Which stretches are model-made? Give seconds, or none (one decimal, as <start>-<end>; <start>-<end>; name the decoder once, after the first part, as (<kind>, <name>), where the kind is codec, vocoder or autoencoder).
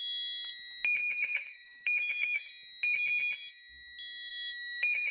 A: 1.0-2.5 (autoencoder, DAC-VAE); 4.3-5.1